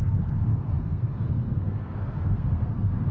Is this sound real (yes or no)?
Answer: no